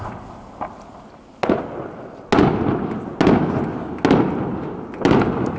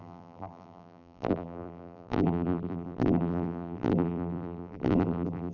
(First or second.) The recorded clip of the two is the first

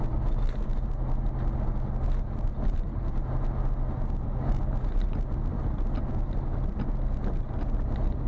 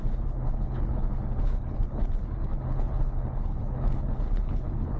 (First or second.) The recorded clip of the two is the first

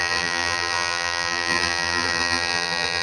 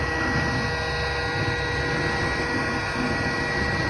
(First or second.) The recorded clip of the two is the second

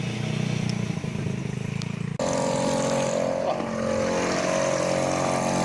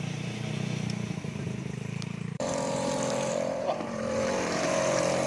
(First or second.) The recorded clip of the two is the first